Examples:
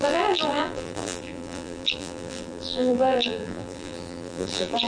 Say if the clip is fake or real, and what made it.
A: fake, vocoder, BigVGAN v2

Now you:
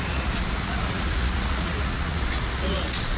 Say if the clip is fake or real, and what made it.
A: fake, vocoder, Vocos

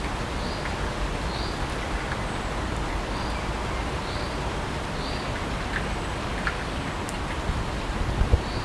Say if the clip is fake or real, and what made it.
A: real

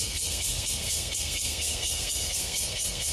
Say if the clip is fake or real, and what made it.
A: fake, codec, SNAC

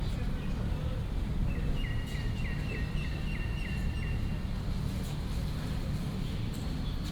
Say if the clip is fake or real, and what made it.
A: real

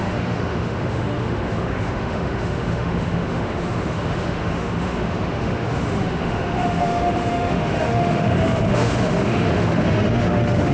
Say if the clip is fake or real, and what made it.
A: fake, autoencoder, DAC-VAE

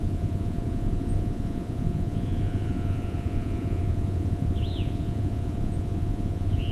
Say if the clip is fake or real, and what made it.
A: fake, vocoder, Vocos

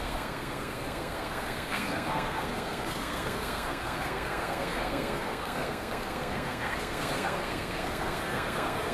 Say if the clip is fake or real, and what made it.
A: fake, codec, SNAC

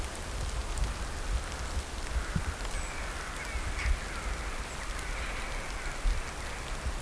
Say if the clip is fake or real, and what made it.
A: real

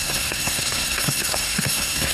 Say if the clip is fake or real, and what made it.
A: fake, codec, SNAC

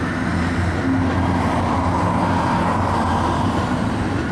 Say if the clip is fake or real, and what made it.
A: real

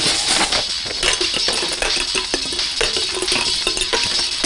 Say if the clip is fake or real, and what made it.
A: real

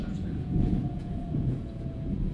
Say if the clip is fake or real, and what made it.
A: fake, vocoder, Vocos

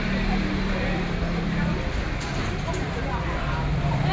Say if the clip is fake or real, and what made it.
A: real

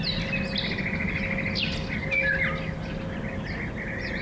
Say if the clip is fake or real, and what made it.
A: real